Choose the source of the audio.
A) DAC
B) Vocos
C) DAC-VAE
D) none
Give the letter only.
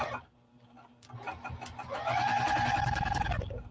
D